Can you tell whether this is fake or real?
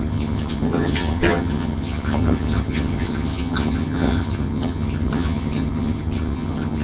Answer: fake